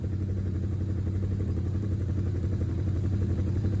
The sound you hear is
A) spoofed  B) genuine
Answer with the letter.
A